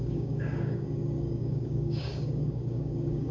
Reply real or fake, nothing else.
fake